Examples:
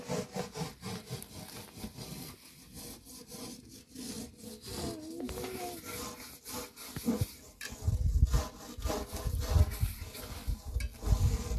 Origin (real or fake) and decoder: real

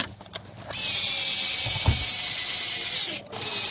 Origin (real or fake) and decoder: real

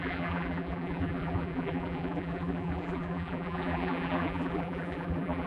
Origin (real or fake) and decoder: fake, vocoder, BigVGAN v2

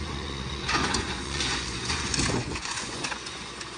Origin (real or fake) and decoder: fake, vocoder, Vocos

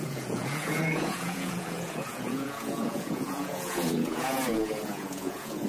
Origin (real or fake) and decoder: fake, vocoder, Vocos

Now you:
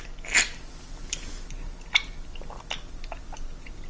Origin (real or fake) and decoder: real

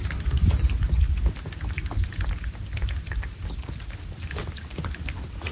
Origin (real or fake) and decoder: real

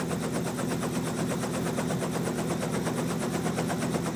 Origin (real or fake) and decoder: real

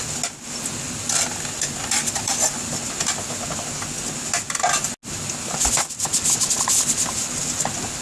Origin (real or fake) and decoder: real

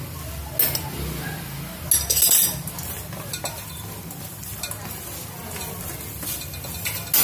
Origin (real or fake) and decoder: real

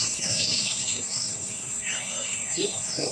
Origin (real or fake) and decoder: fake, codec, SNAC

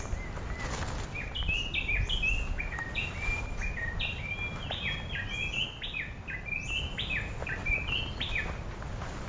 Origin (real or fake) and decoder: real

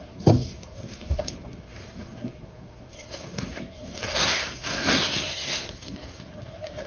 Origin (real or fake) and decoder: fake, codec, SNAC